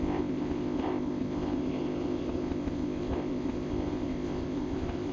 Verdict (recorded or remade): remade